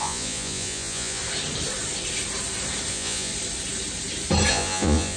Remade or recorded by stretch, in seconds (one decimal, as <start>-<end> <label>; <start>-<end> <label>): 0.0-1.2 remade; 1.2-2.9 recorded; 2.9-3.3 remade; 3.3-4.5 recorded; 4.5-5.2 remade